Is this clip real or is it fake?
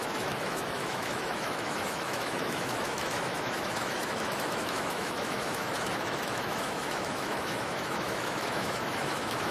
fake